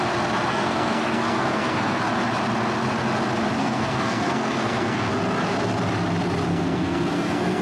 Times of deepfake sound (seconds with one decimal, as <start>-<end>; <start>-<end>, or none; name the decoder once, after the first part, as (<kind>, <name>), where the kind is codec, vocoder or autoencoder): 0.5-2.0 (codec, SNAC); 3.6-5.1; 6.5-7.6